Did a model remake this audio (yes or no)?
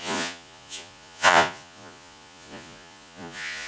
yes